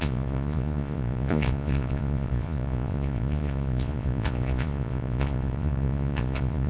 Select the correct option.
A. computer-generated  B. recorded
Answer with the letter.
A